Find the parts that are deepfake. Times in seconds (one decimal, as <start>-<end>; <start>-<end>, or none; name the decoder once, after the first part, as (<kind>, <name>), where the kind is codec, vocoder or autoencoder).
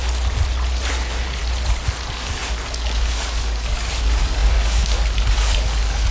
0.9-1.4 (codec, DAC); 2.1-6.1